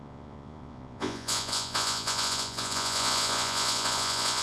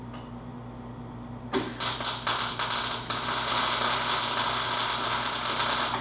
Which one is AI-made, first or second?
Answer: first